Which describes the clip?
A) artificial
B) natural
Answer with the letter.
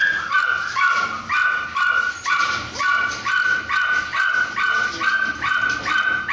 B